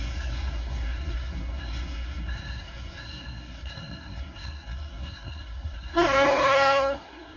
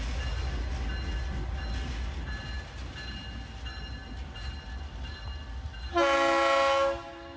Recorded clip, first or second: second